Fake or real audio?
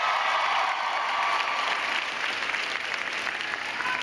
real